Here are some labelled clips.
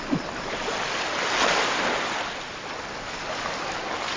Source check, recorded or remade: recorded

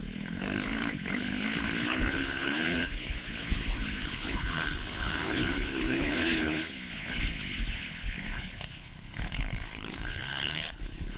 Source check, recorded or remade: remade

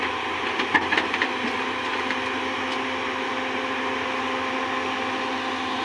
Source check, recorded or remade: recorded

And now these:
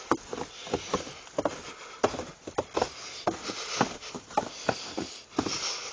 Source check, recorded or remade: recorded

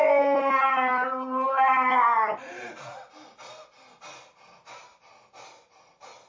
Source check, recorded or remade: recorded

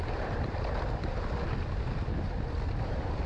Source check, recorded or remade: recorded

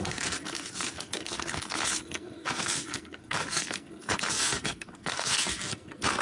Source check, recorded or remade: remade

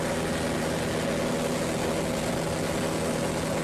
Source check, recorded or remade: recorded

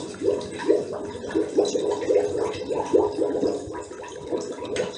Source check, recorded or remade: recorded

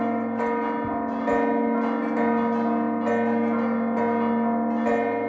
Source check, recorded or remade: recorded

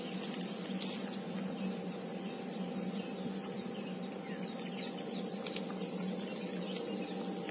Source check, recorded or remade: recorded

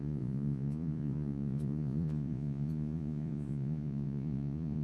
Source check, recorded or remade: remade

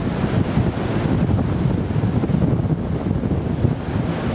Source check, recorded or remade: recorded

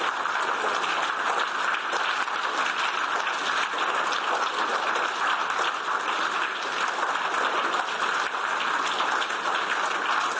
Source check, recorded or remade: recorded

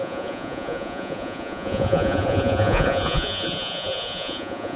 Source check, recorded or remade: remade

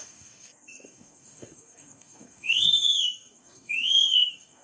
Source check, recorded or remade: remade